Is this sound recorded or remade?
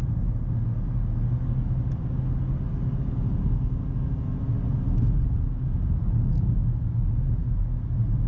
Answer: recorded